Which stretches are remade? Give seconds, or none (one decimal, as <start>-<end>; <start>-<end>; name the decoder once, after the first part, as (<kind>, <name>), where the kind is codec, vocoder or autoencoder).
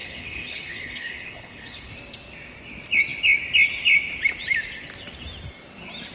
0.0-1.9 (codec, HILCodec)